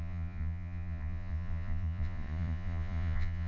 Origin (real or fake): fake